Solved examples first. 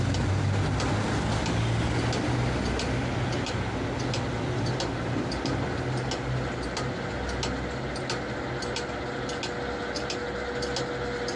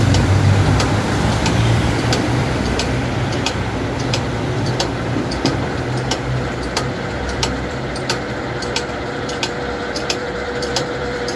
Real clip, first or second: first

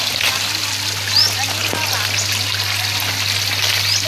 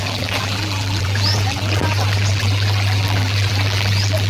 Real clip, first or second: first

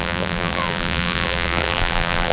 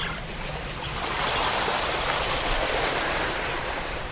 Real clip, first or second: second